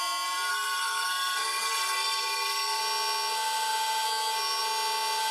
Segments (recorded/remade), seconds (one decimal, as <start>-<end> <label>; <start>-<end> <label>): 0.0-0.5 recorded; 0.5-2.8 remade; 2.8-5.3 recorded